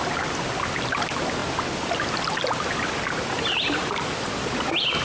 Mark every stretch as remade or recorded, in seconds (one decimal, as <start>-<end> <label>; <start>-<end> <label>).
0.0-5.0 recorded